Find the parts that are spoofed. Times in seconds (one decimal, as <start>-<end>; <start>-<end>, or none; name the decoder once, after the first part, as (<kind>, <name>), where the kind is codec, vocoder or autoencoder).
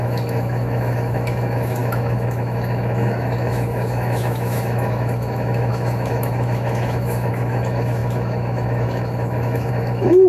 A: 0.0-10.3 (autoencoder, DAC-VAE)